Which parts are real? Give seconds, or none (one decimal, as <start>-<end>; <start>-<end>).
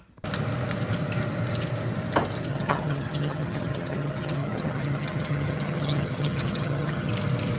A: 0.0-2.5; 7.1-7.6